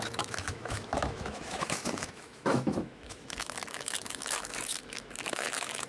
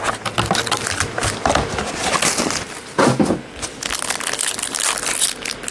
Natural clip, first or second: second